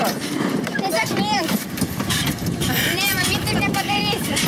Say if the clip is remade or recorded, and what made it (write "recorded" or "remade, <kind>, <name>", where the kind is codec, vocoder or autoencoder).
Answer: remade, vocoder, BigVGAN v2